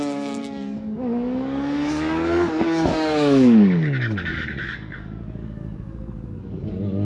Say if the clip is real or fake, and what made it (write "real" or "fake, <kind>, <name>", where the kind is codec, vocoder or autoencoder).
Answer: fake, codec, DAC